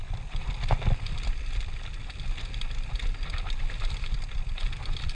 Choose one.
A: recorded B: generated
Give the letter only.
A